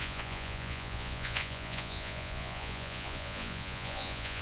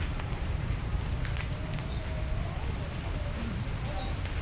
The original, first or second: second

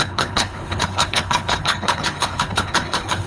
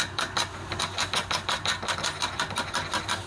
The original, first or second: second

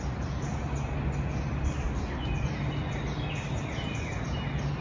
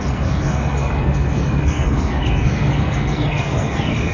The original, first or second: first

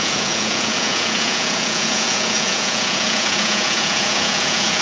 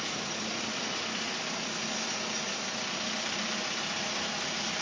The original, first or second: second